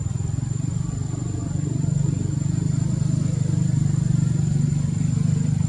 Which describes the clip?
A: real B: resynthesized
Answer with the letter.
A